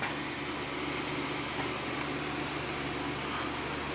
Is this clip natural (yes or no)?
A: yes